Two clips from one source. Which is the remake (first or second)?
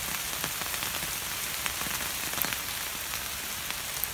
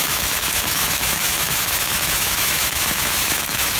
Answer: second